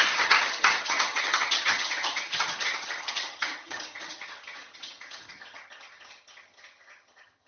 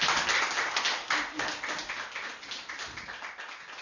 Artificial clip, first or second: first